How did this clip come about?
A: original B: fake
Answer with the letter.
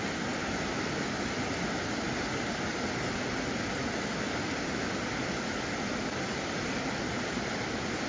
A